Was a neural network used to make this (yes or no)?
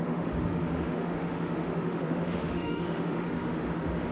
yes